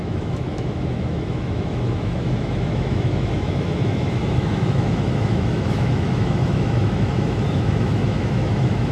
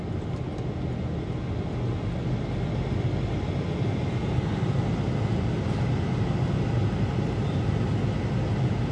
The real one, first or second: second